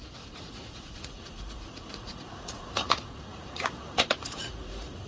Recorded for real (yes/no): no